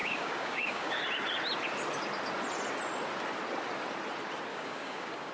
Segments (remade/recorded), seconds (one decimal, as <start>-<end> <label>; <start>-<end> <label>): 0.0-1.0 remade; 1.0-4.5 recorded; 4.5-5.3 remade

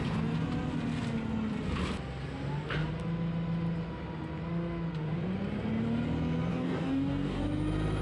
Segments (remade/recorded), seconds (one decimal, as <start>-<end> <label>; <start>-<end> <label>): 0.0-6.5 recorded; 6.5-7.4 remade; 7.4-8.0 recorded

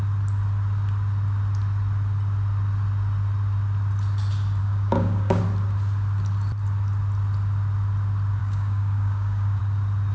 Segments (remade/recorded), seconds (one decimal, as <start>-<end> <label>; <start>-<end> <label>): 0.0-4.6 recorded; 4.6-5.4 remade; 5.4-8.4 recorded; 8.4-9.6 remade; 9.6-10.1 recorded

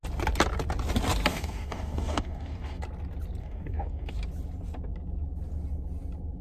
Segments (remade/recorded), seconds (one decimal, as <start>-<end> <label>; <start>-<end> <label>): 0.0-1.3 recorded; 1.3-2.8 remade; 2.8-3.4 recorded; 3.4-4.1 remade; 4.1-6.4 recorded

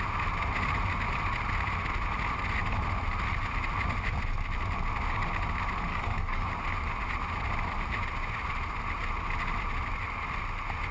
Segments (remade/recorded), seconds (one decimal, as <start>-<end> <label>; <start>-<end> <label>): 0.0-5.9 recorded; 5.9-6.5 remade; 6.5-10.9 recorded